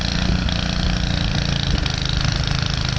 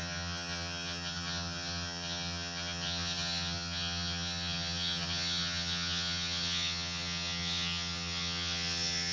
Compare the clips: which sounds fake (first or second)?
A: second